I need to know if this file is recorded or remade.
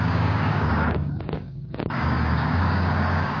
remade